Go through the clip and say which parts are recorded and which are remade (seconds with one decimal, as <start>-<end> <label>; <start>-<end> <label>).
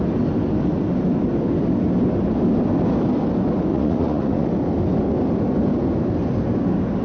0.0-3.7 recorded; 3.7-4.5 remade; 4.5-7.0 recorded